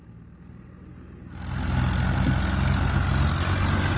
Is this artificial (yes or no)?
no